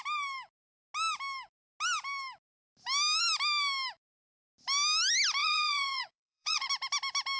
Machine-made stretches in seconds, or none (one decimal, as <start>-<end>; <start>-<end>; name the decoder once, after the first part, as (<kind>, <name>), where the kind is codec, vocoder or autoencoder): 5.4-6.7 (vocoder, Vocos)